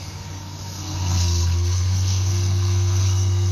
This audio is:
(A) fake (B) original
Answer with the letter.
A